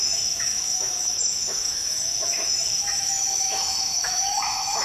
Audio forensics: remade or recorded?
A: remade